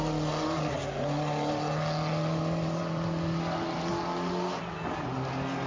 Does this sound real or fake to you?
real